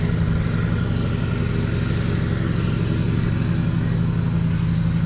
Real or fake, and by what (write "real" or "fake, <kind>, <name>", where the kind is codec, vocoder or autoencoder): real